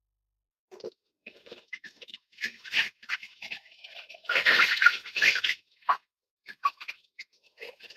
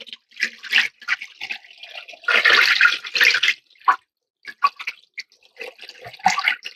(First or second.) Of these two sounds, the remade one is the first